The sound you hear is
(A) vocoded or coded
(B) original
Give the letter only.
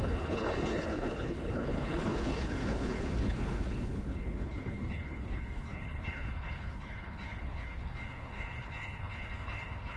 A